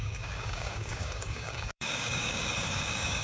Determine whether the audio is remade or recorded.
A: remade